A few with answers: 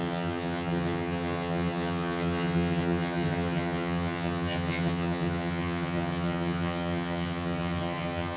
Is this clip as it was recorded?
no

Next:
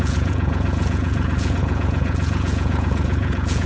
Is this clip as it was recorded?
no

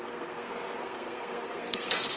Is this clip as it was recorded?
no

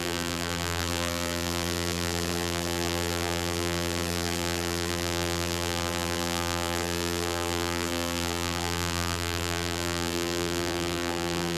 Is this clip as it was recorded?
no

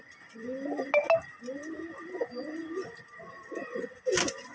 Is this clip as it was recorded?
yes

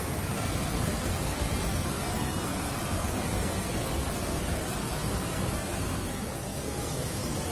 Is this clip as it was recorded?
no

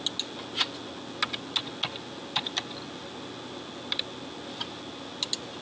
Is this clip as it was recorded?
yes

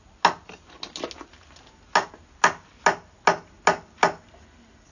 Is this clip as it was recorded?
yes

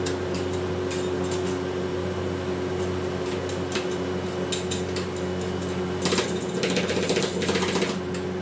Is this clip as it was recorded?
yes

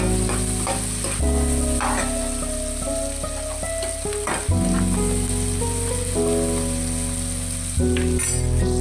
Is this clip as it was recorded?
yes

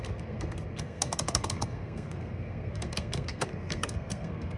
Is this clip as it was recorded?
no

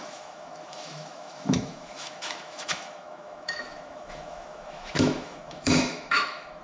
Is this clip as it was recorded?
no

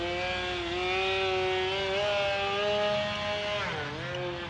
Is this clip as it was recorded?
yes